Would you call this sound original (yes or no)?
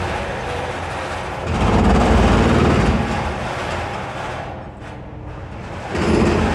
yes